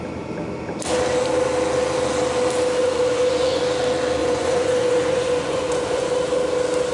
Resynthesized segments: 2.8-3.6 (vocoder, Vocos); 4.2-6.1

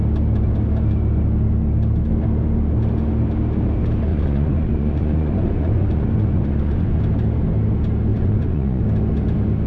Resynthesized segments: 4.1-7.0 (vocoder, Vocos); 8.1-8.8

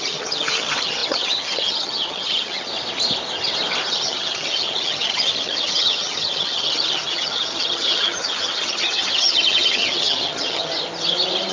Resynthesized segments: 0.0-2.7 (vocoder, HiFi-GAN); 3.9-10.7

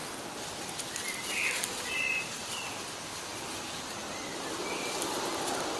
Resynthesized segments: none

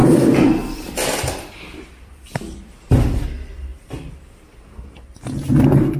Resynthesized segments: 0.0-3.2 (vocoder, BigVGAN v2); 3.7-4.2